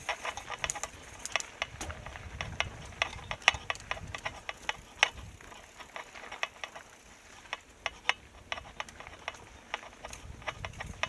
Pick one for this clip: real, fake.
real